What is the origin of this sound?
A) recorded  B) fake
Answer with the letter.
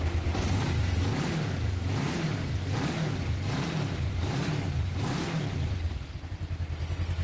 A